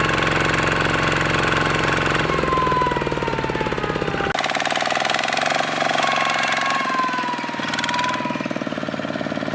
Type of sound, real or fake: real